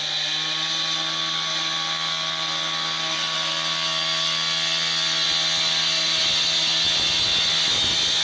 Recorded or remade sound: recorded